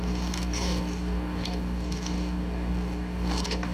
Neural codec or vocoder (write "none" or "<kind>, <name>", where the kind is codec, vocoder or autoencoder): codec, DAC